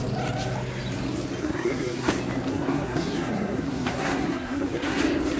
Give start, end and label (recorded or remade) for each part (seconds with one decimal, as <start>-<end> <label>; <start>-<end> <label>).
0.0-1.4 recorded; 1.4-2.1 remade; 2.1-2.5 recorded; 2.5-5.0 remade; 5.0-5.4 recorded